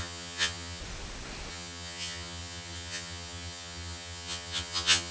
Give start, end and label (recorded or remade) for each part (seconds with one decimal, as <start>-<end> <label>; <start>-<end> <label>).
0.0-0.8 remade; 0.8-1.5 recorded; 1.5-5.1 remade